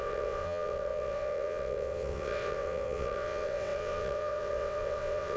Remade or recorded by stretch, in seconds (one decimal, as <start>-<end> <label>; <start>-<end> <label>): 0.0-5.4 remade